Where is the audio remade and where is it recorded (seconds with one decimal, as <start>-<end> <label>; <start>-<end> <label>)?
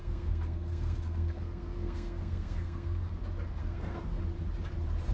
0.0-3.1 remade; 3.1-3.6 recorded; 3.6-4.2 remade; 4.2-5.1 recorded